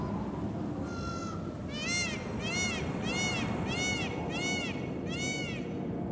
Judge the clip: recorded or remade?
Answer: recorded